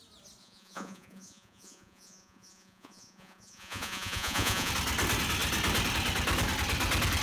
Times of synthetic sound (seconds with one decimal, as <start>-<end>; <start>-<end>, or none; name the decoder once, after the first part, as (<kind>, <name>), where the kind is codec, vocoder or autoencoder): 0.4-4.7 (vocoder, Vocos)